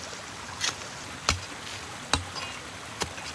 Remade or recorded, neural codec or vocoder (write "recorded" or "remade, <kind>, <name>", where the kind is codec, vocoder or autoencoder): recorded